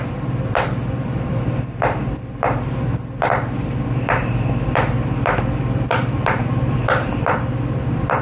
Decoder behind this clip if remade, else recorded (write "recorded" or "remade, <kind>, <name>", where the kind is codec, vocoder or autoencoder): remade, vocoder, BigVGAN v2